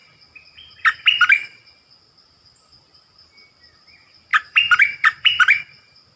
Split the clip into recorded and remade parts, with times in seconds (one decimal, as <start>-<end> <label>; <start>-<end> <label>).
0.0-4.3 recorded; 4.3-5.6 remade; 5.6-6.2 recorded